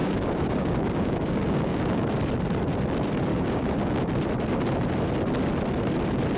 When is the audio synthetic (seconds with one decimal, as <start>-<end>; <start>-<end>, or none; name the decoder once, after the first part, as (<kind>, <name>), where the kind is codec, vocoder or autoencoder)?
0.0-2.1 (codec, DAC); 3.3-4.0